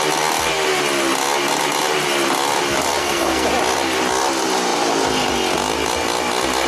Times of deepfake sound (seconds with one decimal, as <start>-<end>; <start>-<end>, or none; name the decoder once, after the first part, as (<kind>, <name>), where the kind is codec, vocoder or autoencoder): 3.0-3.5 (codec, SNAC)